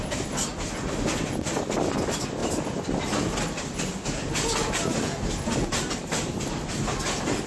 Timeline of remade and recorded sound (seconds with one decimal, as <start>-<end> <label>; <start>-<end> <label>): 0.0-0.5 recorded; 0.5-1.6 remade; 1.6-2.4 recorded; 2.4-6.7 remade; 6.7-7.5 recorded